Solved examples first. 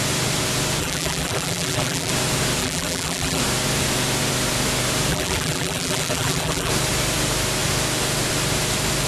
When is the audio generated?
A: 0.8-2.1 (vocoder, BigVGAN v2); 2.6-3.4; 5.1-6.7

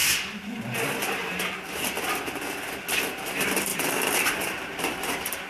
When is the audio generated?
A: 3.3-5.5 (vocoder, BigVGAN v2)

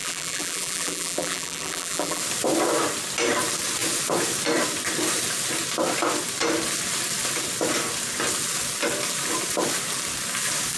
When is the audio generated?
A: 0.0-2.2 (vocoder, BigVGAN v2)

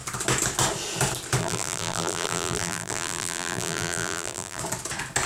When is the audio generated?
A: 1.4-4.6 (vocoder, BigVGAN v2)

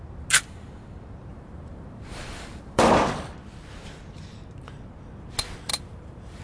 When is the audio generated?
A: 1.3-2.9 (vocoder, BigVGAN v2); 5.7-6.4